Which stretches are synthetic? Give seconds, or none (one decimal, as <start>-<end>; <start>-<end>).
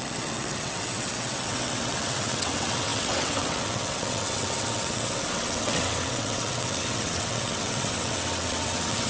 0.0-9.1